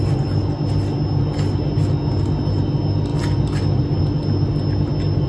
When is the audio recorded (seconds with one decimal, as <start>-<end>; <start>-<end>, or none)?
0.0-5.3